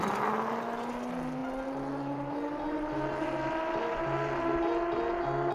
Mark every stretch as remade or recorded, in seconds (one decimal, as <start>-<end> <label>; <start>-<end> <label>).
0.0-5.5 recorded